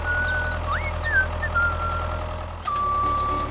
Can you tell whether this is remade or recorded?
recorded